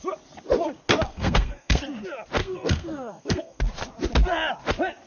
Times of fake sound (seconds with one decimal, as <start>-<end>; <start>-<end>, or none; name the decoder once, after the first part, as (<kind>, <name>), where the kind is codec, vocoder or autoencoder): 1.1-1.8 (codec, SNAC); 2.4-3.6